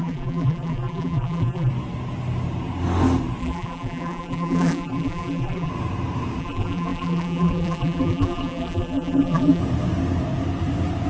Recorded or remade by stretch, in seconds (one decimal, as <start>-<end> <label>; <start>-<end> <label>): 0.0-1.7 remade; 1.7-3.4 recorded; 3.4-5.7 remade; 5.7-6.4 recorded; 6.4-9.6 remade; 9.6-11.1 recorded